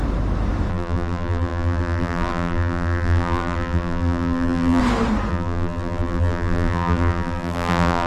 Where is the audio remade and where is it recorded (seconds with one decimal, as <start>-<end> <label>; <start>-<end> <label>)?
0.0-0.7 recorded; 0.7-4.8 remade; 4.8-5.3 recorded; 5.3-8.1 remade